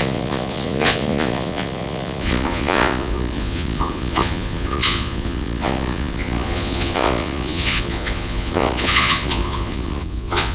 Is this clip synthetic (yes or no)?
yes